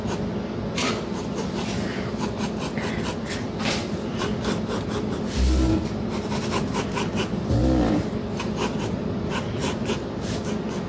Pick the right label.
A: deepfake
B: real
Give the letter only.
B